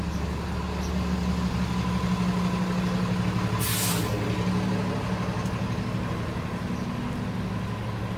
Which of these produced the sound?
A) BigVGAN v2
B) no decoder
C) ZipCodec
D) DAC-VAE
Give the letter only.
B